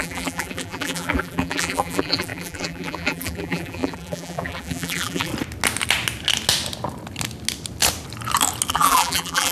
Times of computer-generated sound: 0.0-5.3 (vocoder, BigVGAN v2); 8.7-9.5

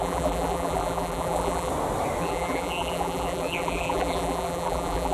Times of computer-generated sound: 0.0-1.7 (vocoder, BigVGAN v2); 2.2-5.1

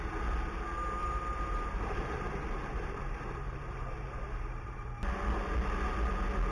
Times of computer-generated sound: 1.0-4.9 (vocoder, BigVGAN v2)

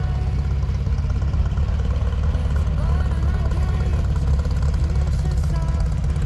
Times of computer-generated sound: 1.4-2.4 (vocoder, BigVGAN v2); 3.9-4.8

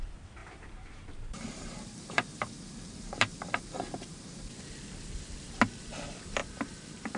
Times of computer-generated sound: 0.4-4.6 (vocoder, BigVGAN v2); 6.4-7.2